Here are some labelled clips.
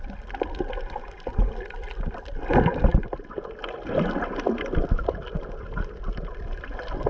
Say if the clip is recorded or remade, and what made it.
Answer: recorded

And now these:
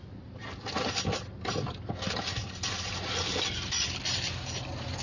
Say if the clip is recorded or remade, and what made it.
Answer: recorded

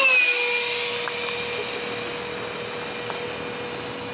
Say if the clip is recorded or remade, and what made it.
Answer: recorded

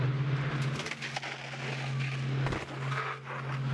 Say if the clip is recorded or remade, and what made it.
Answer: recorded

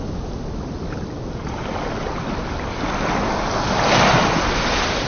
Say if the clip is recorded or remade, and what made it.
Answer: recorded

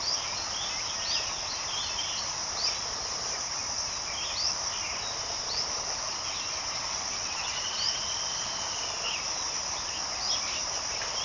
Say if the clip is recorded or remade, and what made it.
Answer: recorded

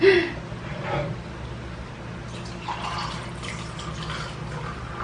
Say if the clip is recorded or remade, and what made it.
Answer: remade, vocoder, BigVGAN v2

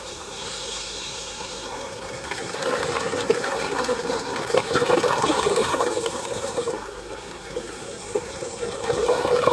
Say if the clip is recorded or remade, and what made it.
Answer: remade, codec, SNAC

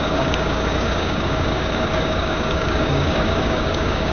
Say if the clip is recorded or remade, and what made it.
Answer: remade, codec, DAC